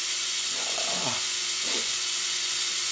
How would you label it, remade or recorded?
remade